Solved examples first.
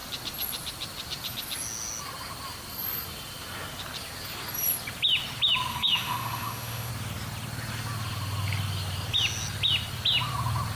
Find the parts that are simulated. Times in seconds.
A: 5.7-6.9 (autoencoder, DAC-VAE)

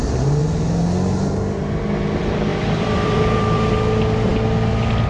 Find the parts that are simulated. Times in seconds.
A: 2.5-3.7 (vocoder, BigVGAN v2)

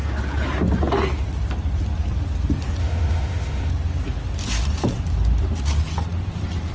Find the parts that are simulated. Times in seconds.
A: 2.8-3.7 (autoencoder, DAC-VAE)

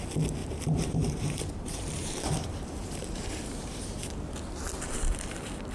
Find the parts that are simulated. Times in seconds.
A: 0.4-3.8 (vocoder, BigVGAN v2)

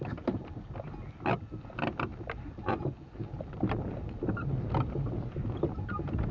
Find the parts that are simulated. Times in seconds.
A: none

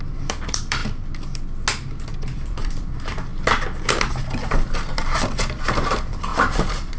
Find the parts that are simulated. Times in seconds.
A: 0.0-0.8 (vocoder, BigVGAN v2); 2.1-3.3; 4.9-7.0

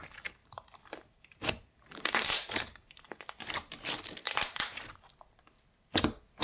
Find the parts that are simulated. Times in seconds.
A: 0.4-3.2 (vocoder, BigVGAN v2); 4.2-4.8

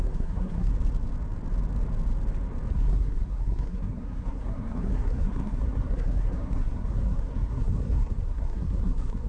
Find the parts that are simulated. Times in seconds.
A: 0.0-0.7 (codec, SNAC); 2.7-9.3